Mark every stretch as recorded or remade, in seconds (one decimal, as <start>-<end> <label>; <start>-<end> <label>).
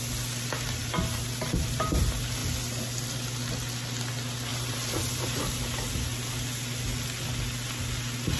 0.0-0.8 recorded; 0.8-2.0 remade; 2.0-4.5 recorded; 4.5-5.4 remade; 5.4-8.4 recorded